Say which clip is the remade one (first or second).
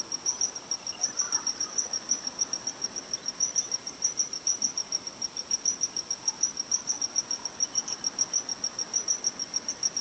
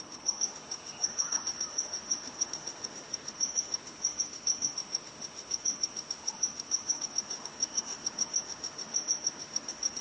second